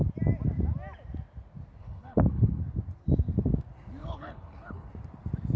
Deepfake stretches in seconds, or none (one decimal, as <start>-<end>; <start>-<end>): 1.8-2.6; 4.0-4.9